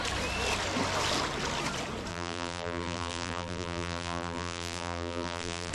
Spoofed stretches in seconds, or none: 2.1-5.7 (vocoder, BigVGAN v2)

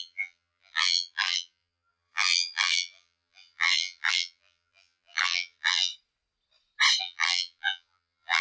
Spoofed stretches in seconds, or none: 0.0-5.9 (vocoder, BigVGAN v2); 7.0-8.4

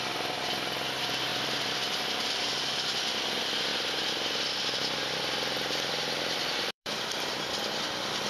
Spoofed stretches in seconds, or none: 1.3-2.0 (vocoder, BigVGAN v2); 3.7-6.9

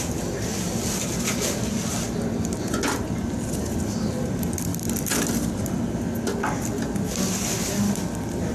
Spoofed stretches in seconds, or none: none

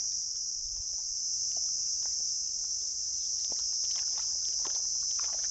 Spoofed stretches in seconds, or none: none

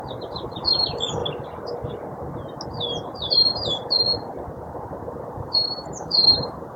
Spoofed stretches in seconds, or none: 0.0-1.2 (vocoder, BigVGAN v2); 5.3-6.8

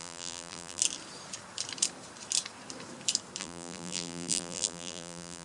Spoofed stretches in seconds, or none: 0.0-0.8 (vocoder, BigVGAN v2); 3.4-5.4

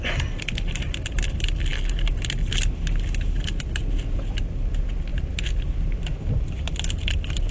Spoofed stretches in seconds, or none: none